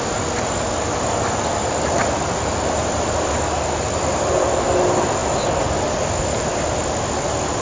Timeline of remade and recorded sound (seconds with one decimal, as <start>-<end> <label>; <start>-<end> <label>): 0.0-1.5 recorded; 1.5-3.3 remade; 3.3-7.6 recorded

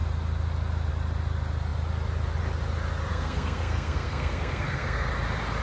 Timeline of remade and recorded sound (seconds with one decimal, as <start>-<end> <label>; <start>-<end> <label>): 0.0-3.1 recorded; 3.1-5.1 remade; 5.1-5.6 recorded